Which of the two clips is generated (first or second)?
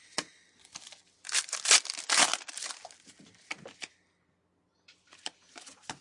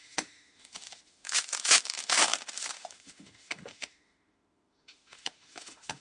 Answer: second